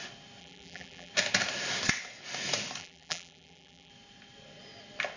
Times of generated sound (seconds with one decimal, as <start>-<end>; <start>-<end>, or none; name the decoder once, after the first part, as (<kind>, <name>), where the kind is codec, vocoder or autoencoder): 0.4-1.1 (vocoder, BigVGAN v2); 2.8-3.9